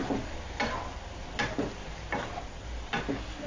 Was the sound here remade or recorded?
recorded